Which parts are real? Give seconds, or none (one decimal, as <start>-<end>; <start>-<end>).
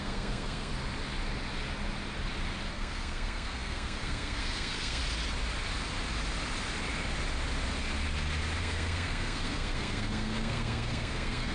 0.7-2.7; 5.0-8.6